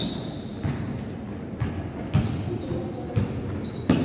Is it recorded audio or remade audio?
recorded